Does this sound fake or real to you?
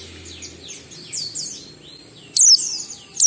real